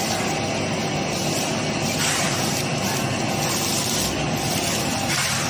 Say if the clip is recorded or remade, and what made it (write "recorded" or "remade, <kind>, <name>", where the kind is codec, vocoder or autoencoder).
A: recorded